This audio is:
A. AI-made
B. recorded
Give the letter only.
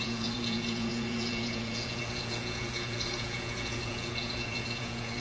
A